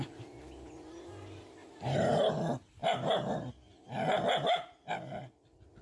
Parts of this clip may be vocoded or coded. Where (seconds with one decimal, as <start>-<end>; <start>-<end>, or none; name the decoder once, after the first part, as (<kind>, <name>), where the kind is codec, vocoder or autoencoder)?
1.6-2.3 (vocoder, BigVGAN v2); 2.8-3.5